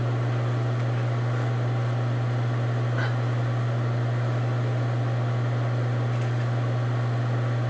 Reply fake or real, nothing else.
real